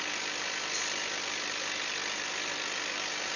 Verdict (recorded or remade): recorded